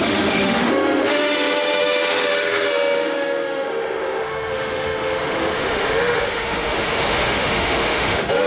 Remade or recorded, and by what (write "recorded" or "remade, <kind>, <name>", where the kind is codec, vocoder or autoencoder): remade, autoencoder, DAC-VAE